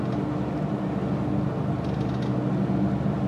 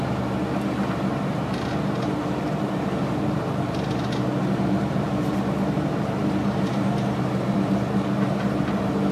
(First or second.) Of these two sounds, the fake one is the second